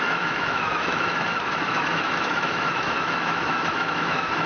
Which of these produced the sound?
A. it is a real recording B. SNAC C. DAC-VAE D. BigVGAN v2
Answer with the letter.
C